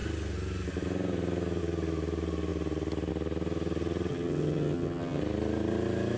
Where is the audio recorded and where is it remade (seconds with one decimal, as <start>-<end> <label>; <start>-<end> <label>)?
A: 0.0-4.1 recorded; 4.1-5.2 remade; 5.2-6.2 recorded